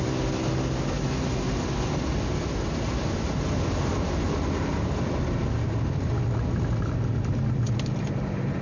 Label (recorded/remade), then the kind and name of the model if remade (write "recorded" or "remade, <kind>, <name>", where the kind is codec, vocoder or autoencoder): recorded